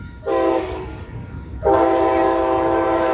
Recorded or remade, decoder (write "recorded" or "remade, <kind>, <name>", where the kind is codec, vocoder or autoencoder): remade, codec, DAC